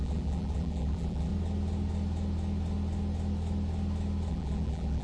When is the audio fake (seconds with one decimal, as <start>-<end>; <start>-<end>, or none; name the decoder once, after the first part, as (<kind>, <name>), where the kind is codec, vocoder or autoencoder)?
0.0-1.3 (vocoder, BigVGAN v2); 4.3-5.0